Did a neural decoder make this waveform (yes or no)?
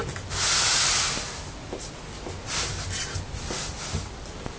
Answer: no